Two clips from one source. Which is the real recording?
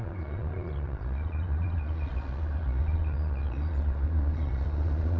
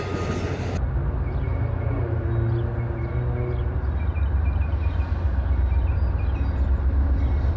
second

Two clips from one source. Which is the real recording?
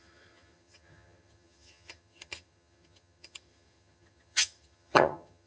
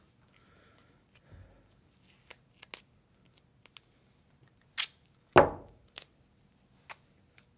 second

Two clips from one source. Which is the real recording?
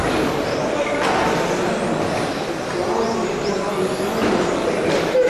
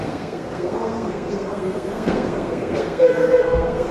first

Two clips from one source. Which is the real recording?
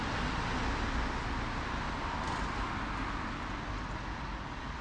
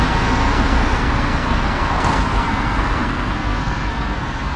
first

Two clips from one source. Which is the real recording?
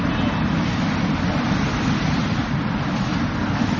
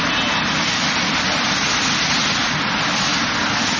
second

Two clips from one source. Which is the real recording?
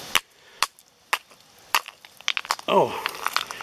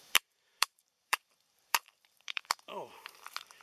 first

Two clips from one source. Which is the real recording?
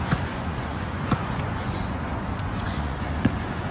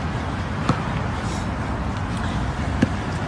second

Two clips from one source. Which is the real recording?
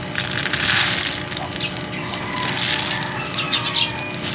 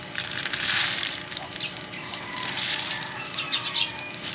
first